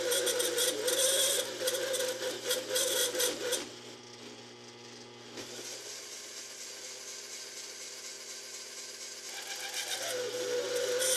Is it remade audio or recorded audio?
recorded